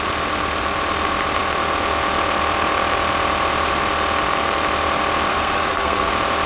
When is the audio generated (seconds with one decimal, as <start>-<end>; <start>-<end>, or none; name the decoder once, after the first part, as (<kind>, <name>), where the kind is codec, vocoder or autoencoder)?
5.3-6.1 (codec, SNAC)